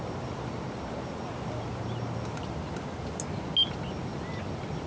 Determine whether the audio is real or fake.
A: real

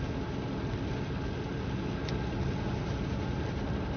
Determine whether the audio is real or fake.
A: real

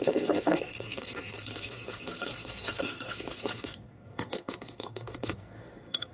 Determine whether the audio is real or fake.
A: fake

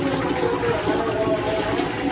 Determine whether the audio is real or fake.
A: real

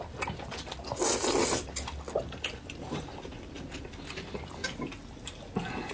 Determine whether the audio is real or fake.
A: real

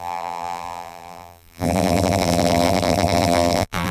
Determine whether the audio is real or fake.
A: fake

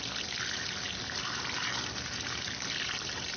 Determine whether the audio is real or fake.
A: real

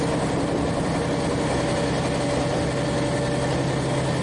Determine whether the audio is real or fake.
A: real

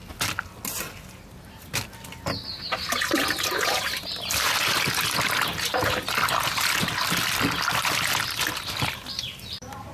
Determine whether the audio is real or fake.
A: real